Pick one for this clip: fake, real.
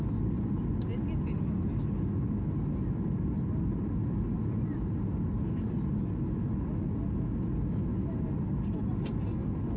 real